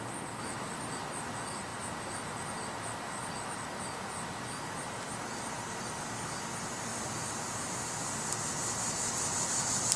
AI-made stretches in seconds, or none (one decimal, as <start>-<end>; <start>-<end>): 6.9-8.4